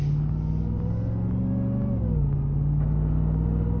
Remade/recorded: recorded